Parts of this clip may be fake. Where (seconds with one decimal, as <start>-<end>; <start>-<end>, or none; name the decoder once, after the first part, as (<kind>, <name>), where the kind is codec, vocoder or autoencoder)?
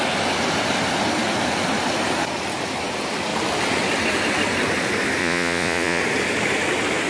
5.2-6.0 (vocoder, Vocos)